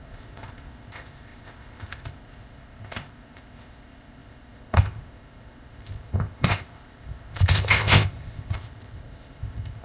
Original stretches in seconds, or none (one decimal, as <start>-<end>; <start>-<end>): none